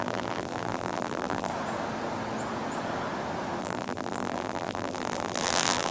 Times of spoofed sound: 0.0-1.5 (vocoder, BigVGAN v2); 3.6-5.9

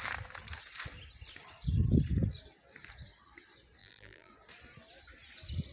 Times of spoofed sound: 3.8-4.3 (vocoder, BigVGAN v2)

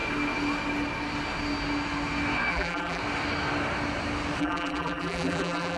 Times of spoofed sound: 2.5-3.0 (vocoder, BigVGAN v2); 4.4-5.8

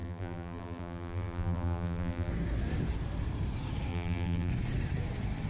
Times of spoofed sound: 0.0-2.3 (vocoder, BigVGAN v2); 3.9-4.5

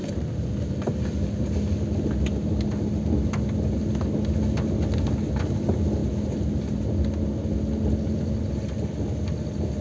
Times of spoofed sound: 0.0-1.0 (vocoder, BigVGAN v2); 6.0-6.5

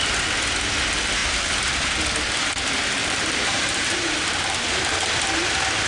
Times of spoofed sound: 3.0-4.5 (vocoder, BigVGAN v2)

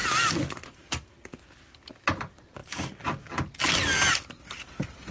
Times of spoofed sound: none